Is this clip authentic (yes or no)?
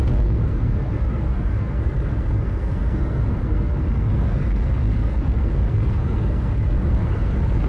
no